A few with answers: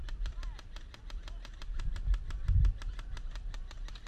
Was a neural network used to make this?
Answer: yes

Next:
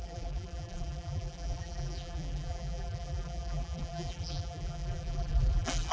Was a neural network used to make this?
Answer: yes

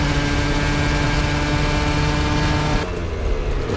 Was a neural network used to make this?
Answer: no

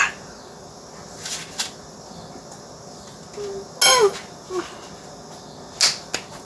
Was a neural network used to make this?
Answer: no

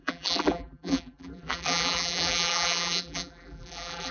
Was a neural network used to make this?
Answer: yes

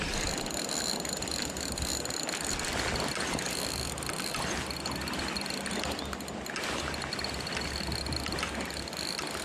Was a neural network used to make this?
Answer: no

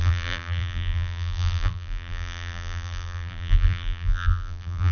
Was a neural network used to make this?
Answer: yes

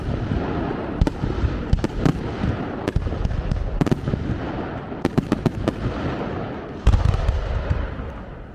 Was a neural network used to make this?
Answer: no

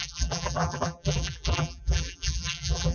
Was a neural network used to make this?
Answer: yes